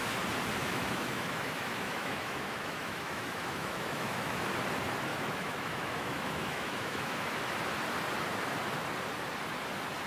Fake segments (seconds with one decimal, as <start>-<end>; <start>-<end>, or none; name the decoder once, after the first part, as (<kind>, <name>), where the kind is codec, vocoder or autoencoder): 0.6-4.5 (autoencoder, DAC-VAE); 5.1-7.4